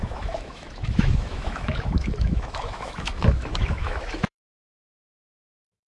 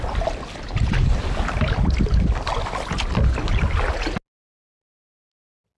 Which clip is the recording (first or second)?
second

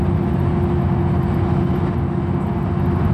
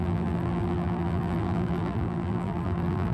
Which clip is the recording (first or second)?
first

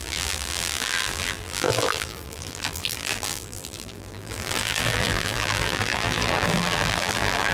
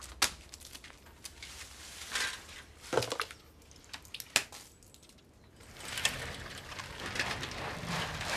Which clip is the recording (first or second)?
second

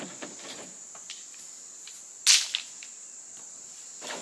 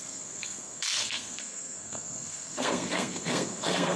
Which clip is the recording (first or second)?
first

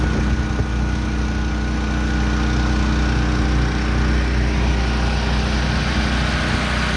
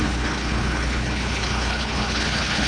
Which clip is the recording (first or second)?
first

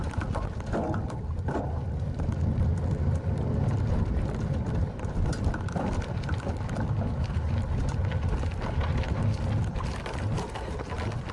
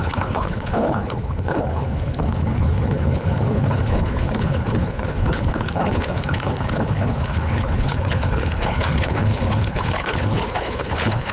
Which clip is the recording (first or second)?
first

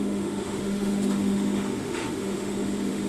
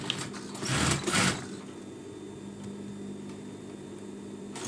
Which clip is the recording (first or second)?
second